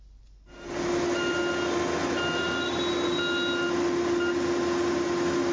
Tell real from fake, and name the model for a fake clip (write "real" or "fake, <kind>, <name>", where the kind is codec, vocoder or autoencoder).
real